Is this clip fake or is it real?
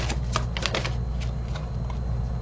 real